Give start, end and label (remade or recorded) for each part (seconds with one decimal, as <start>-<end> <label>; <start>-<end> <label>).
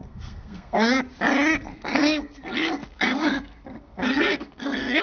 0.0-1.0 remade; 1.0-1.7 recorded; 1.7-5.0 remade